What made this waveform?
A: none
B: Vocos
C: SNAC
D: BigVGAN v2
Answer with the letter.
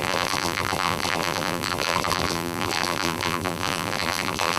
D